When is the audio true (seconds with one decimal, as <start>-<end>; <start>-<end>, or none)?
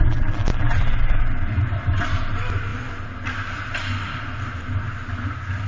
0.0-5.7